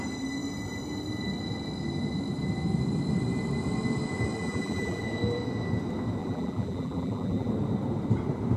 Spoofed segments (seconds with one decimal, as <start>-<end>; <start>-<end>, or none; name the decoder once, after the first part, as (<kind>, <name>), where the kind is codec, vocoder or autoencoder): 4.4-5.0 (vocoder, BigVGAN v2); 6.2-7.5